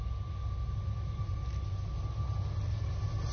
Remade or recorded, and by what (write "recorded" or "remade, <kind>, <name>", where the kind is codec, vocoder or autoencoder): recorded